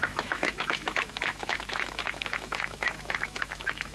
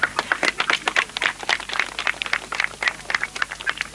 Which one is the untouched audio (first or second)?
second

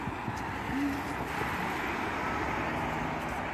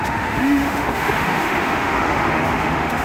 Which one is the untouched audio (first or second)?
first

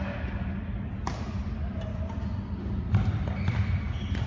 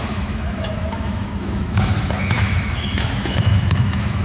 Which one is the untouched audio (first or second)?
first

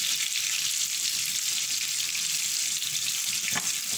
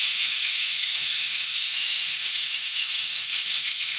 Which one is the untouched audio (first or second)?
first